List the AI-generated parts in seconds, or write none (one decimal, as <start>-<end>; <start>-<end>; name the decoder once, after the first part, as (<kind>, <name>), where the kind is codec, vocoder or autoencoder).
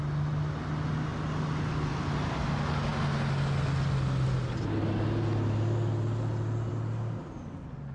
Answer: none